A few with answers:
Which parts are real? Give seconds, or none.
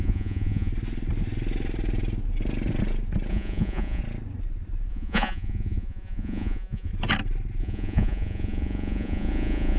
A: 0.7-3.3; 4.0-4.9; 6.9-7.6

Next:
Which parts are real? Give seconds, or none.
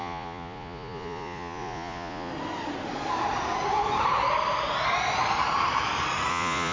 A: 2.3-6.3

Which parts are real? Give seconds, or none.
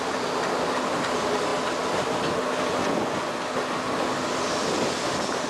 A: 0.0-2.8; 3.3-5.5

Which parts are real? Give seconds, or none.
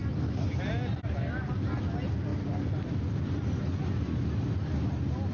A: 0.0-5.3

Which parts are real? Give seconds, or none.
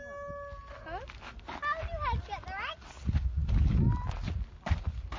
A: 0.0-5.2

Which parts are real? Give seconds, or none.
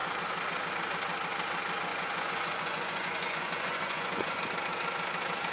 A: 0.0-1.9; 4.4-5.5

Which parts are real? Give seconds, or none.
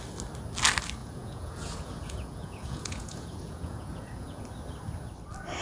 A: 0.0-1.0; 4.4-5.6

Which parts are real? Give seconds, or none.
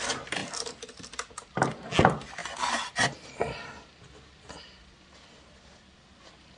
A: 0.0-6.6